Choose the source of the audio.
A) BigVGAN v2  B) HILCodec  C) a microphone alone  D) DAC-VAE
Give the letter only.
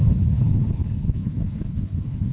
B